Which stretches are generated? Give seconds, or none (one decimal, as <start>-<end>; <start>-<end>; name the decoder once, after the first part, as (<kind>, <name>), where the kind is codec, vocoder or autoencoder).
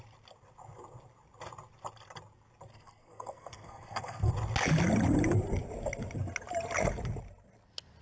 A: 2.7-4.3 (codec, SNAC)